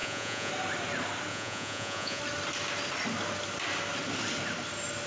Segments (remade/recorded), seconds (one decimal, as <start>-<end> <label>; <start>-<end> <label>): 0.0-0.5 remade; 0.5-1.3 recorded; 1.3-2.2 remade; 2.2-5.1 recorded